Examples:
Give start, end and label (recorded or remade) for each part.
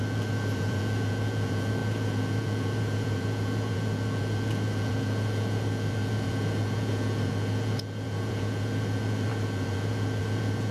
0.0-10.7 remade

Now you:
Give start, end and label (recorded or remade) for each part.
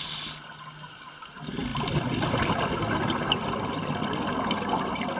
0.0-5.2 recorded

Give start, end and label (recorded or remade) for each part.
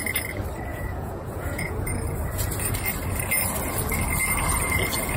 0.0-0.7 recorded; 0.7-2.0 remade; 2.0-5.2 recorded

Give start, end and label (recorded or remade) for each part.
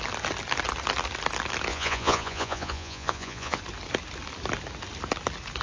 0.0-1.7 recorded; 1.7-3.6 remade; 3.6-5.6 recorded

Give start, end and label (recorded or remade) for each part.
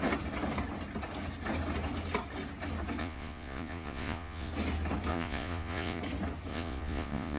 0.0-3.0 recorded; 3.0-4.5 remade; 4.5-5.1 recorded; 5.1-6.0 remade; 6.0-6.5 recorded; 6.5-7.4 remade